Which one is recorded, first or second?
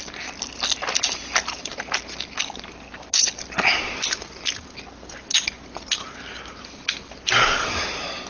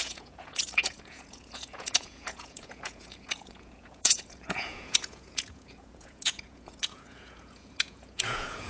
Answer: first